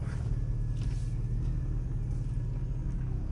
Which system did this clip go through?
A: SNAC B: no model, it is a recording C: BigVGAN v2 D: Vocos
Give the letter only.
B